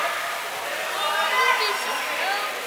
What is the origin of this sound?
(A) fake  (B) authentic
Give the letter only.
B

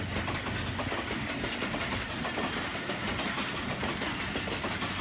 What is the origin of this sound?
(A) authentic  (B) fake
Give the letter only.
A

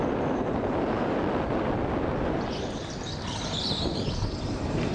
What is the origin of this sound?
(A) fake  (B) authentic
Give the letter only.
B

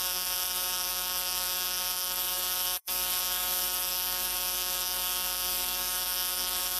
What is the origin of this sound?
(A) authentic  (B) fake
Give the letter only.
B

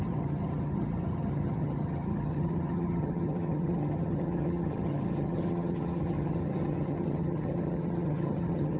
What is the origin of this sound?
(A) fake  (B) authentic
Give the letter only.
A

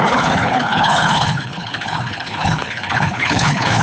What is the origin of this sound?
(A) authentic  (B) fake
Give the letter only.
B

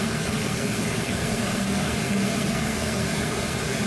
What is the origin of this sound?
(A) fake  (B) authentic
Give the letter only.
A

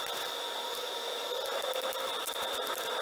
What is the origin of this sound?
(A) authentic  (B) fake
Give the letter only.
A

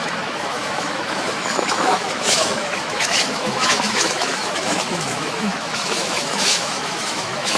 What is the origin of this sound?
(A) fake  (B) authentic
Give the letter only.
A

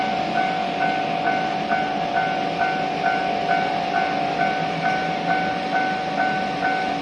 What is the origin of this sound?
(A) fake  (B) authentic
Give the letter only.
B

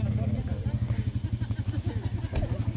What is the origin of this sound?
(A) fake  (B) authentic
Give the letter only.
B